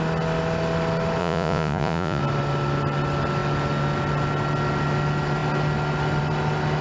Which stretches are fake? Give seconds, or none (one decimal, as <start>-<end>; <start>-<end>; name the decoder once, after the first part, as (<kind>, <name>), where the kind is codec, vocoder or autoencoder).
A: 1.2-2.2 (vocoder, Vocos)